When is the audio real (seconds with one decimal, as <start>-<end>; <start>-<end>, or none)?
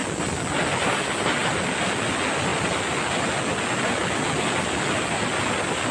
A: 0.0-5.9